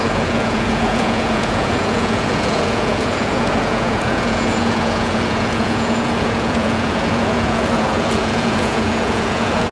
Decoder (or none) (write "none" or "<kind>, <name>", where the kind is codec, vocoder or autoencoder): vocoder, Vocos